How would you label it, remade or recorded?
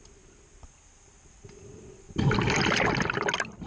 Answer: recorded